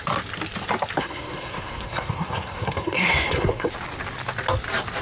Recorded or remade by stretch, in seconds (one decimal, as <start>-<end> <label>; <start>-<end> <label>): 0.0-1.0 recorded; 1.0-3.7 remade; 3.7-5.0 recorded